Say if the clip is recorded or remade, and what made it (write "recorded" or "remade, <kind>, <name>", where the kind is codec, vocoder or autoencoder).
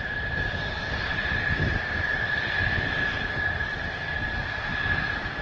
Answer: recorded